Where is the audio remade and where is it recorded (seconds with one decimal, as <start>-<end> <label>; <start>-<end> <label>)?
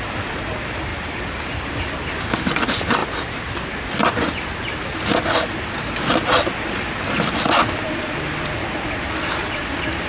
0.0-10.1 recorded